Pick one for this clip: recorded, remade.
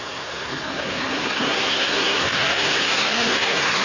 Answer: remade